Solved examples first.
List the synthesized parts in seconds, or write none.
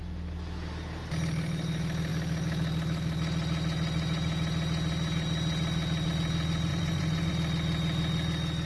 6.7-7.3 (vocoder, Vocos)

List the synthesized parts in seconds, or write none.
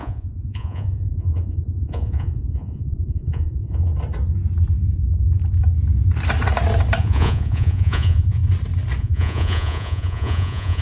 0.0-3.9 (vocoder, Vocos); 7.0-8.4; 9.0-10.8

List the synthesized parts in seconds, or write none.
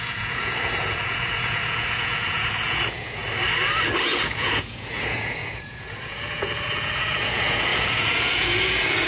0.0-3.2 (vocoder, Vocos); 4.1-9.1